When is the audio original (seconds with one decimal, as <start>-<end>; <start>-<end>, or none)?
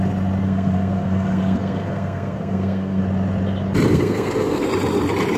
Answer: 0.0-0.4; 3.0-3.9; 4.7-5.4